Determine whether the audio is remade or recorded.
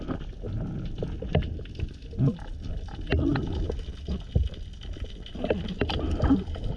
recorded